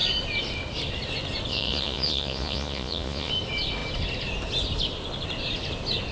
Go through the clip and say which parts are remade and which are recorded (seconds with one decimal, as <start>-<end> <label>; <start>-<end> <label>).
0.0-1.5 recorded; 1.5-3.3 remade; 3.3-6.1 recorded